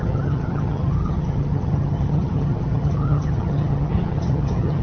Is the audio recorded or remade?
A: remade